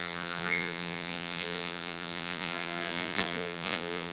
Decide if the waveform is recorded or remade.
remade